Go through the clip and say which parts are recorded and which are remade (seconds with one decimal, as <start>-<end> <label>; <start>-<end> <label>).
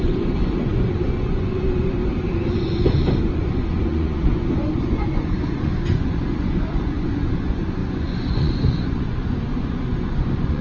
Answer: 0.0-2.0 remade; 2.0-2.5 recorded; 2.5-10.6 remade